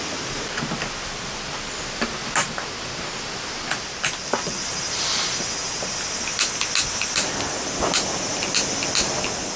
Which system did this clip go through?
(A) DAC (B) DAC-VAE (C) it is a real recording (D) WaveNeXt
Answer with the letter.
C